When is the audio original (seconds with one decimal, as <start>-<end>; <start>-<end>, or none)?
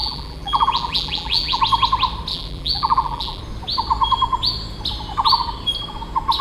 1.6-2.3; 3.4-6.4